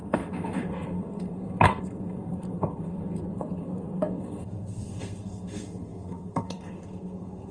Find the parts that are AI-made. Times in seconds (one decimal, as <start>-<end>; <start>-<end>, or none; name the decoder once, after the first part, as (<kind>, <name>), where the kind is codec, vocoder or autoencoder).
0.0-7.5 (codec, SNAC)